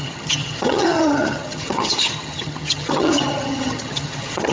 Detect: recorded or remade remade